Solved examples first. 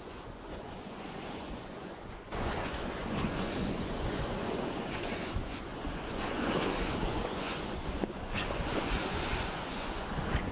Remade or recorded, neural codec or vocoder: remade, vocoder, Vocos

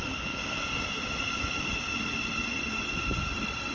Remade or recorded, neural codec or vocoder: recorded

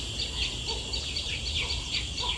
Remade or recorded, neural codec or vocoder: recorded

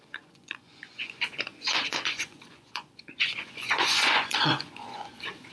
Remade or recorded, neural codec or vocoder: remade, vocoder, Vocos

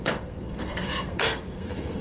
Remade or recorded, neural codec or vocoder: remade, codec, SNAC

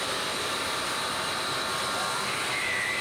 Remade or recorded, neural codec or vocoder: recorded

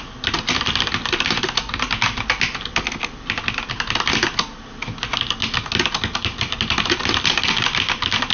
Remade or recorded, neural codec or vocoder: recorded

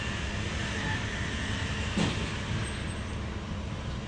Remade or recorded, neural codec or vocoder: recorded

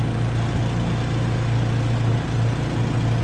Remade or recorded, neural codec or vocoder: recorded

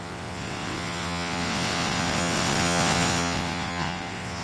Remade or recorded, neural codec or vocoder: remade, vocoder, WaveNeXt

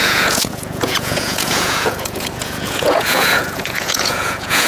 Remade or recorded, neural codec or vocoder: remade, vocoder, Vocos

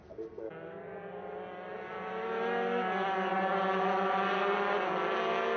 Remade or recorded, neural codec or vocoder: recorded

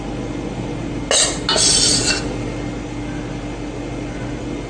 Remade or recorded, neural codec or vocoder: recorded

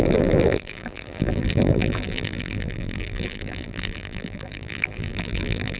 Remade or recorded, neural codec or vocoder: remade, vocoder, BigVGAN v2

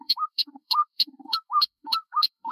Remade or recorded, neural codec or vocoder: remade, autoencoder, DAC-VAE